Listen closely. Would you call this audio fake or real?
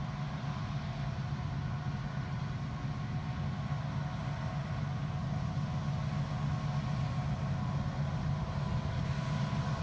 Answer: real